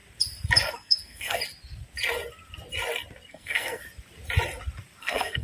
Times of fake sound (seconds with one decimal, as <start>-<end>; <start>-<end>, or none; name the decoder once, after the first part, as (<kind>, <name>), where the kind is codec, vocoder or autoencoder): 0.7-1.4 (codec, SNAC); 3.3-3.8; 5.0-5.4